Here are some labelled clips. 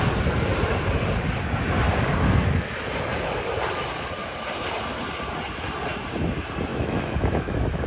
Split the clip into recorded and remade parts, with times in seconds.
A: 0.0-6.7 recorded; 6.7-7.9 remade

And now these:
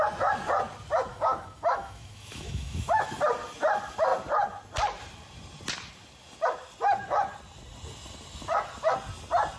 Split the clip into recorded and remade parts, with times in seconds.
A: 0.0-1.1 recorded; 1.1-3.2 remade; 3.2-9.6 recorded